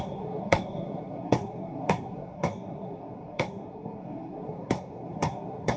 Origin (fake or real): fake